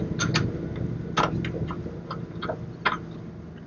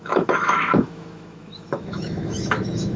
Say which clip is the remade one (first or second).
second